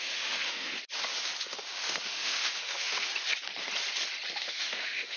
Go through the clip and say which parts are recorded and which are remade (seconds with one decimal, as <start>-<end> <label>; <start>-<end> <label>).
0.0-0.7 remade; 0.7-1.4 recorded; 1.4-3.1 remade; 3.1-4.3 recorded; 4.3-5.2 remade

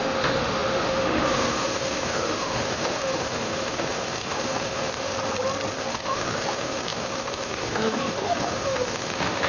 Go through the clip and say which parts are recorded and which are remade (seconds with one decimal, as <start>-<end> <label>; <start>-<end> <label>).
0.0-5.1 remade; 5.1-5.7 recorded; 5.7-9.5 remade

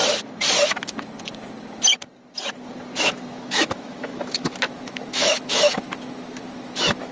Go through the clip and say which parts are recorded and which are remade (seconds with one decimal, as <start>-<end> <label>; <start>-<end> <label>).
0.0-3.0 recorded; 3.0-7.1 remade

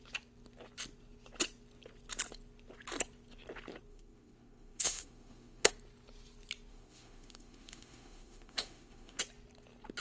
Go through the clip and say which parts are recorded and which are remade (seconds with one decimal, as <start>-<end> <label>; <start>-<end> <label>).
0.0-3.9 recorded; 3.9-5.7 remade; 5.7-6.7 recorded; 6.7-9.2 remade; 9.2-10.0 recorded

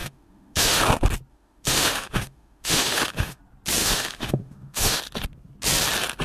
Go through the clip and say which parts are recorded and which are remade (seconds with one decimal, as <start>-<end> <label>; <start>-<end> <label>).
0.0-0.8 remade; 0.8-1.3 recorded; 1.3-3.4 remade; 3.4-3.8 recorded; 3.8-5.0 remade; 5.0-6.2 recorded

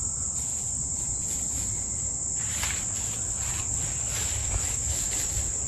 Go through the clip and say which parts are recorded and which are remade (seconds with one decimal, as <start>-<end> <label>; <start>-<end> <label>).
0.0-4.4 recorded; 4.4-5.1 remade; 5.1-5.7 recorded

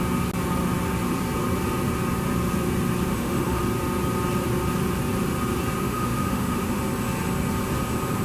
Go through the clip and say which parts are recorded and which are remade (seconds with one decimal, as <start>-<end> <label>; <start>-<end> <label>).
0.0-3.1 recorded; 3.1-3.6 remade; 3.6-5.8 recorded; 5.8-6.8 remade; 6.8-8.2 recorded

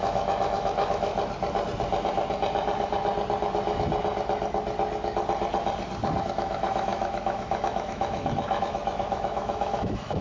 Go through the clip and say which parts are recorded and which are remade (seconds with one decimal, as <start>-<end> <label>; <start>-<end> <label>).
0.0-1.1 remade; 1.1-6.2 recorded; 6.2-10.2 remade